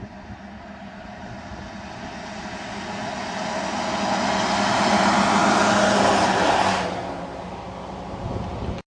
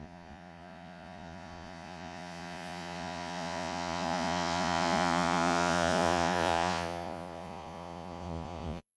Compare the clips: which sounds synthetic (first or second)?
second